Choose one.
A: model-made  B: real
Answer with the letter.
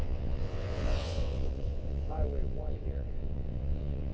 A